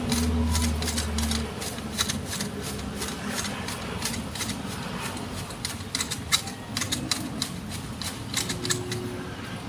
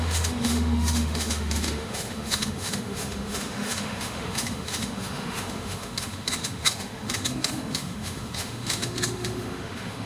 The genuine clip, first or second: first